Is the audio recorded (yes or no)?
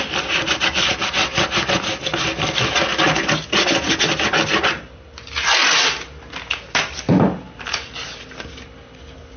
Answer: yes